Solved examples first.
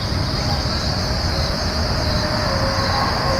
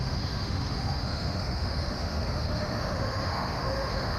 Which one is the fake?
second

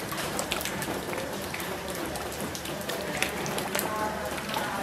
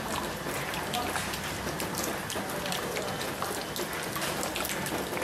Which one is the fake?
first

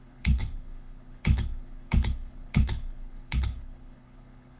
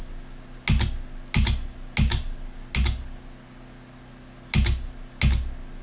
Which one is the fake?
first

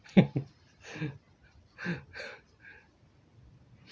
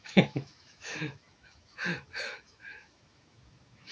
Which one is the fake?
second